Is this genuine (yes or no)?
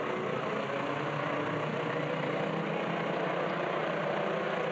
yes